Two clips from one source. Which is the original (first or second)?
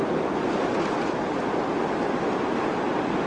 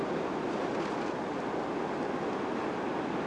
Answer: second